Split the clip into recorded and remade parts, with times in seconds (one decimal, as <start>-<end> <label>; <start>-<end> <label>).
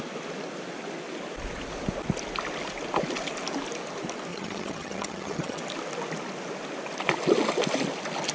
0.0-4.3 recorded; 4.3-5.6 remade; 5.6-8.3 recorded